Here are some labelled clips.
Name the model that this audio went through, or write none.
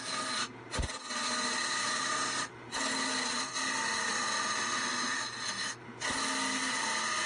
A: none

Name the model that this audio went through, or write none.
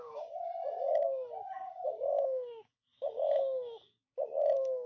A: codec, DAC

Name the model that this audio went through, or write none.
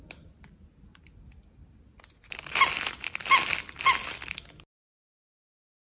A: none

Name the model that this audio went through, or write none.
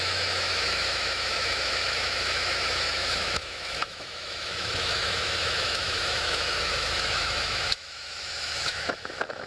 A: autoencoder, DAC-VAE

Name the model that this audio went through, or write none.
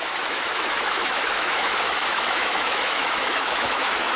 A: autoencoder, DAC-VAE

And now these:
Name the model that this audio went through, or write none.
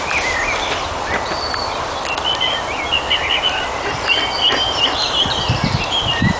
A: none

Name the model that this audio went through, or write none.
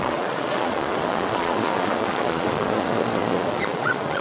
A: vocoder, Vocos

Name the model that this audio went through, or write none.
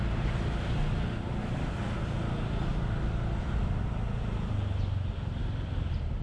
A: none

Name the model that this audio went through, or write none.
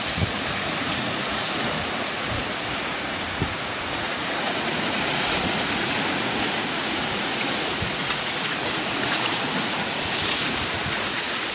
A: vocoder, Vocos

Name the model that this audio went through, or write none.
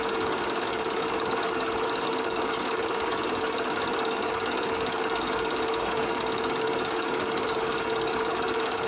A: codec, DAC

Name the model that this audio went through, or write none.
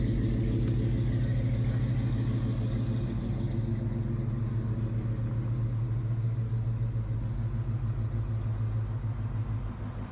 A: none